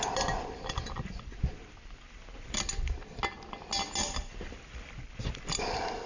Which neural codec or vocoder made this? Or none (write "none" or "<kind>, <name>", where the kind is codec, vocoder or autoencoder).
none